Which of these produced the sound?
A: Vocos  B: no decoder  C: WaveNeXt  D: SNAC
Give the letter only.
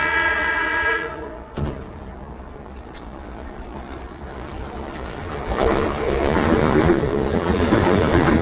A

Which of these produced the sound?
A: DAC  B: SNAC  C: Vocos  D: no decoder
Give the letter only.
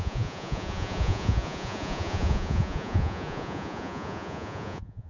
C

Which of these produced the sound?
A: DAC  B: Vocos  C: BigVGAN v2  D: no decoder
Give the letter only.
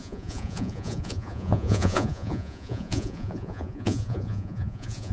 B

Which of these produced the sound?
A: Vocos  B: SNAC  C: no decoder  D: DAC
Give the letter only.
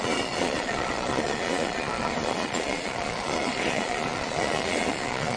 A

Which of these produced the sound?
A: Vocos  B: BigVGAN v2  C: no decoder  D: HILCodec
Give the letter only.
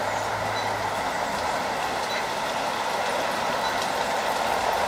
C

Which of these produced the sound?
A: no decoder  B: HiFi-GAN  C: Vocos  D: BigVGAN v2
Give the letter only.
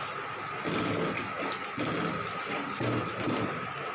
A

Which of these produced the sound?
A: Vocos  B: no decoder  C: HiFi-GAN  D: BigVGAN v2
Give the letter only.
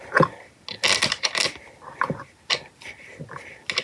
B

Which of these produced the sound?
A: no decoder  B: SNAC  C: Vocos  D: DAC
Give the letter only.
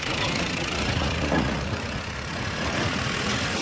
C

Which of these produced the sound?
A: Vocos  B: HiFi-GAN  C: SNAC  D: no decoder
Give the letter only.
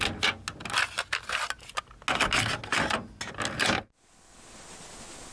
D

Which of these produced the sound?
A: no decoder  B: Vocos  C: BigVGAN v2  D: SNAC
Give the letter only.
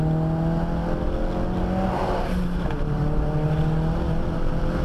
A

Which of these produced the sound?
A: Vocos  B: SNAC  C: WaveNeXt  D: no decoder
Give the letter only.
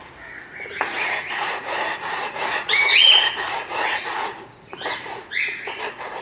A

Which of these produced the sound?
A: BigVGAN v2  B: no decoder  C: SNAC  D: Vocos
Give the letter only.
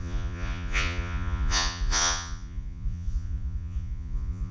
D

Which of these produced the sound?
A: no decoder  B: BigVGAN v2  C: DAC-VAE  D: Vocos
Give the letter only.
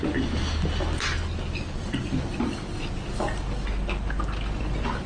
A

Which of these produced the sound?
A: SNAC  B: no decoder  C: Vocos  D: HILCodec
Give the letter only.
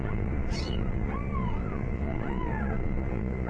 C